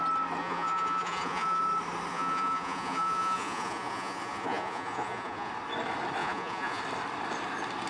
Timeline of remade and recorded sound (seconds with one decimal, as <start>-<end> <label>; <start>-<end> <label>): 0.0-0.4 recorded; 0.4-1.6 remade; 1.6-2.1 recorded; 2.1-5.5 remade; 5.5-6.2 recorded; 6.2-6.8 remade; 6.8-7.9 recorded